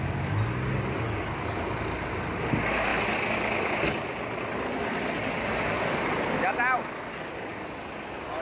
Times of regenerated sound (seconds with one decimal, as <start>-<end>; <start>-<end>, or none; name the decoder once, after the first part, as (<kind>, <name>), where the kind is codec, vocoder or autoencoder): none